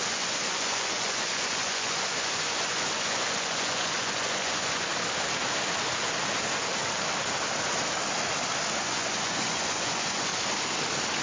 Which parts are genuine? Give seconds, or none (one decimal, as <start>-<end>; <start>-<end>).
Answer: 4.9-8.8; 10.3-11.2